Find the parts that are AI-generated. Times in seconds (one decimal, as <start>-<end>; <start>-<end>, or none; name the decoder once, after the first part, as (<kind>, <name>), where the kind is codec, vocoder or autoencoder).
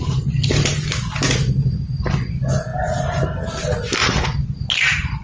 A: none